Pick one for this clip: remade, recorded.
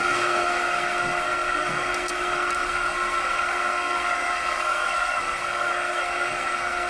remade